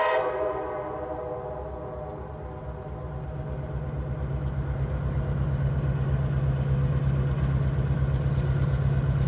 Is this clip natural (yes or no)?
yes